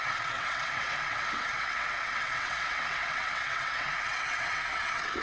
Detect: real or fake fake